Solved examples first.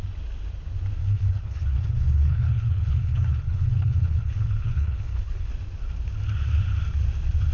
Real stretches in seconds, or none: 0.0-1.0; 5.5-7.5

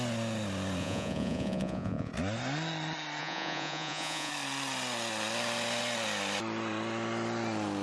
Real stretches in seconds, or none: 0.0-0.8; 2.1-3.2; 4.3-7.8

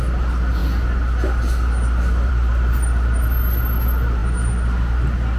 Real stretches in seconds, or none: 0.0-5.4

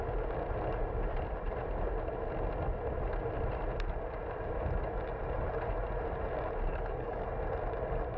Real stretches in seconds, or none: 0.0-6.7; 7.3-8.2